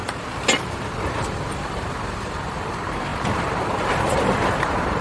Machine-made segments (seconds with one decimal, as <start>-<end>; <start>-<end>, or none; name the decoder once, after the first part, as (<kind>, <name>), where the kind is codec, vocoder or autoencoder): 1.1-5.0 (vocoder, BigVGAN v2)